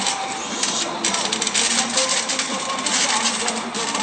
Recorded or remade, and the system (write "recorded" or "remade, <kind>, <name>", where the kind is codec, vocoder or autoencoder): recorded